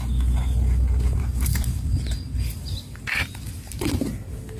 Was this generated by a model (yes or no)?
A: yes